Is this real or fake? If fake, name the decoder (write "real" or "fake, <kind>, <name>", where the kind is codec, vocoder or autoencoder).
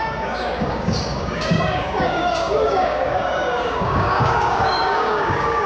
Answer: fake, codec, DAC